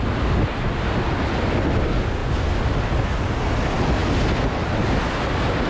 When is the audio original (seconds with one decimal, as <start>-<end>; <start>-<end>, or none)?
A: 0.0-5.7